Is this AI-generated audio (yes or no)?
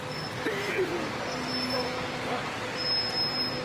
no